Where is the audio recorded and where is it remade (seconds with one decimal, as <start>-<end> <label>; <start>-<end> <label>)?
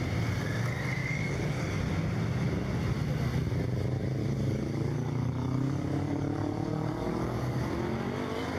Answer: 0.0-1.0 recorded; 1.0-1.8 remade; 1.8-4.2 recorded; 4.2-7.6 remade; 7.6-8.6 recorded